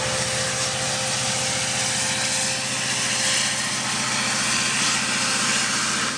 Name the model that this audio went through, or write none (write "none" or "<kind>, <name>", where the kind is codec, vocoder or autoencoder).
none